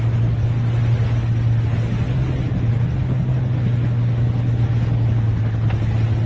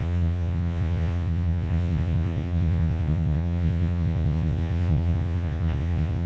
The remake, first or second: second